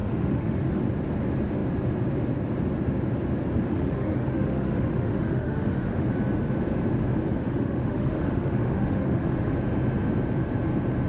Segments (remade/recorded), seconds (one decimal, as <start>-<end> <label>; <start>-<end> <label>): 0.0-0.8 remade; 0.8-3.7 recorded; 3.7-6.1 remade; 6.1-7.4 recorded; 7.4-9.5 remade; 9.5-11.1 recorded